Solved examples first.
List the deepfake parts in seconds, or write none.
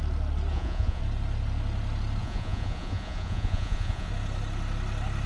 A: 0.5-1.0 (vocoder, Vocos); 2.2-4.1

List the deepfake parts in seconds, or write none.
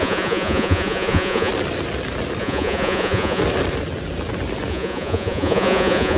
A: 0.0-1.5 (vocoder, Vocos); 2.4-3.4; 4.7-6.2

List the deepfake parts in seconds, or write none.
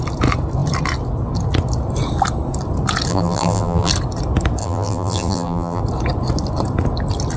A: 3.1-3.9 (vocoder, BigVGAN v2); 4.6-5.8